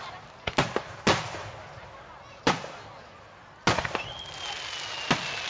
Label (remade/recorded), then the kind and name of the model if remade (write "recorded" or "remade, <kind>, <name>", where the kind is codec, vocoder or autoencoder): recorded